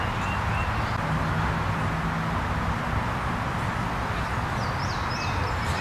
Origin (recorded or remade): recorded